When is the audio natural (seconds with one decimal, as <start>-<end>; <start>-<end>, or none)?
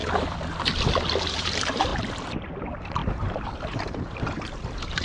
0.0-1.2; 1.9-2.6